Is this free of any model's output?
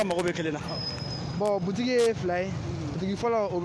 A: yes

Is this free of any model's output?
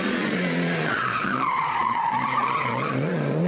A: no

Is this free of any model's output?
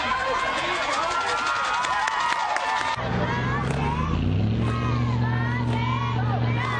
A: yes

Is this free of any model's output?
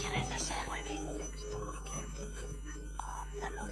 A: no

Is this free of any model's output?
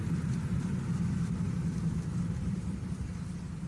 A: yes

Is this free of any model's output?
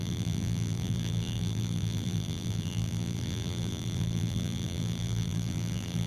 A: no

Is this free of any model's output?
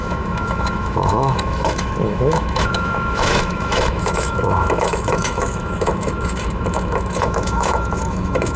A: no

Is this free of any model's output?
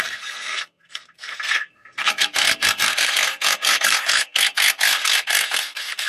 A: no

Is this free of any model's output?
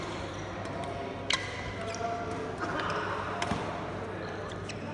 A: yes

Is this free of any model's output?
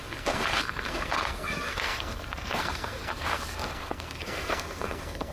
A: no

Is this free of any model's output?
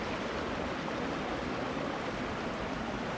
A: yes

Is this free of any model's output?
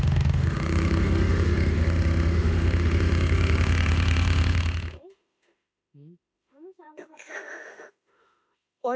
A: no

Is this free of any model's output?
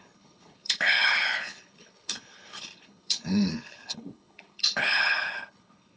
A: no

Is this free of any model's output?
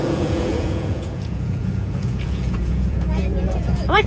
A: no